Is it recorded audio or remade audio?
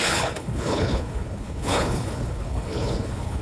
remade